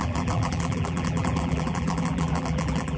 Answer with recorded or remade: remade